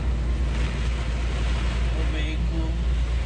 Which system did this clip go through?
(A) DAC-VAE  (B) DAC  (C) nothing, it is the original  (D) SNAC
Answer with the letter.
C